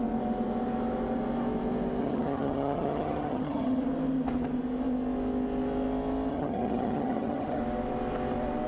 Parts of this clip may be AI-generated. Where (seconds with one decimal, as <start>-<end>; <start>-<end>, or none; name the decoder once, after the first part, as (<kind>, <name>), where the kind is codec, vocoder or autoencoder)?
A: 2.0-3.8 (vocoder, HiFi-GAN); 6.3-7.6